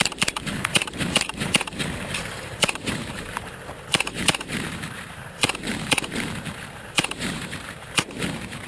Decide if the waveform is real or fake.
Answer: fake